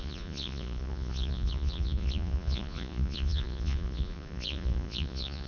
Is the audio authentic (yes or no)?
no